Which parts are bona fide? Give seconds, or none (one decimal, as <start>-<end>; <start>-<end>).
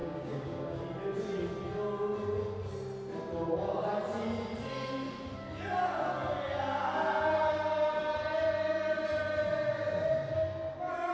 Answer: 0.8-11.1